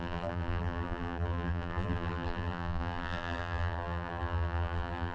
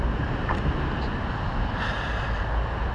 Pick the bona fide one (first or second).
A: second